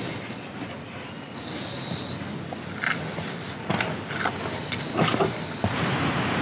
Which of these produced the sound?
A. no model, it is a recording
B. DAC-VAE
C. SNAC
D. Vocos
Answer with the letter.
A